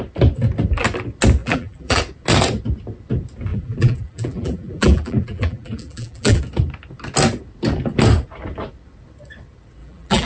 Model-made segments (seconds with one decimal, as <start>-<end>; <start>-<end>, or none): 1.4-2.0; 3.5-6.4; 9.8-10.3